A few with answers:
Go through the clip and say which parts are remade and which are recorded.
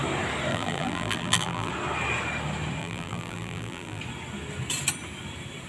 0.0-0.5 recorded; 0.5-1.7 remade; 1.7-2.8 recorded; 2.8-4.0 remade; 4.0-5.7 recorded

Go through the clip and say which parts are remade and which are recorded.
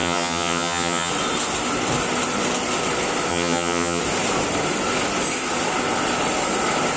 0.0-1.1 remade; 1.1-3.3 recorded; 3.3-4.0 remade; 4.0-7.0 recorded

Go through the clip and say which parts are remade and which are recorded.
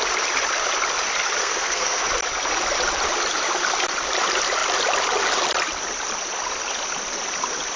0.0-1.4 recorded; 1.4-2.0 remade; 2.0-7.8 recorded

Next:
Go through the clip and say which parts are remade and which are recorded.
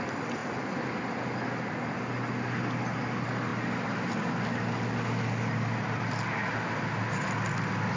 0.0-8.0 recorded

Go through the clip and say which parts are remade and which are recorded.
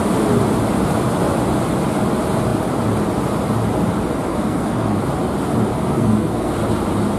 0.0-4.3 recorded; 4.3-5.0 remade; 5.0-5.7 recorded; 5.7-6.5 remade; 6.5-7.2 recorded